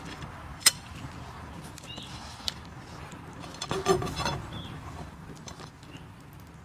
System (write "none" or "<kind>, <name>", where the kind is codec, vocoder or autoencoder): none